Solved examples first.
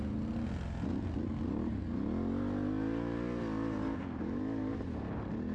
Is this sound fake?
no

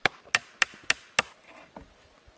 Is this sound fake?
yes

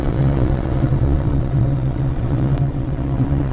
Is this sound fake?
yes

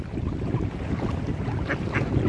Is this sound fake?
no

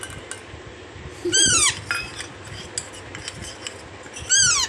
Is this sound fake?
no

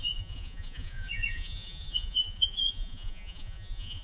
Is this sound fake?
yes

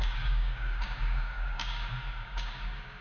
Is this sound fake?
yes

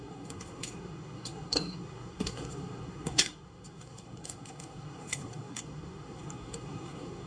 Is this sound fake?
yes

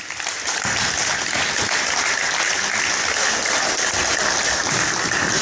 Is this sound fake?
no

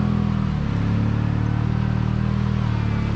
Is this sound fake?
no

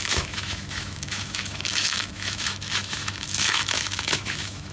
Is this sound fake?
yes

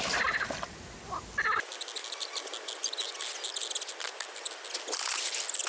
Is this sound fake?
no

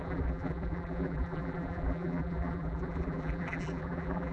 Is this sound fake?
yes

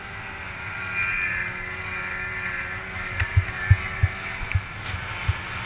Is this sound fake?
no